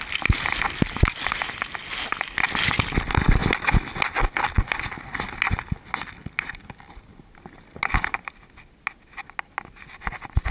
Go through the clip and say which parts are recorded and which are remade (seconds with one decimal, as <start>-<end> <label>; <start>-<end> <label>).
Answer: 0.0-10.5 recorded